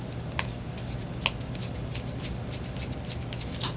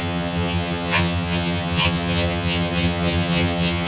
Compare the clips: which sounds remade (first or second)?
second